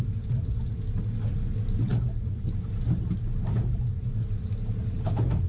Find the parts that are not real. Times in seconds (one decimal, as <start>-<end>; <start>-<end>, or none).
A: none